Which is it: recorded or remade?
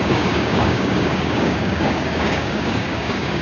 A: remade